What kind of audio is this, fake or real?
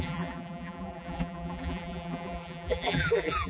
fake